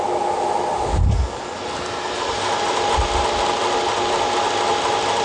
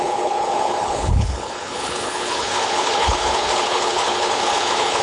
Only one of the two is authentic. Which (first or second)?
first